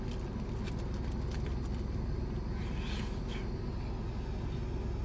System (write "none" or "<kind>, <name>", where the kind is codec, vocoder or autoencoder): none